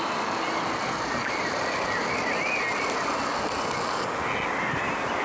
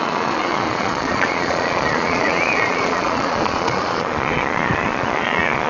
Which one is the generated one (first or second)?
second